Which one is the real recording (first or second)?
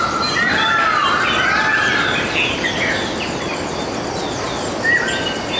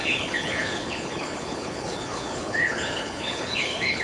first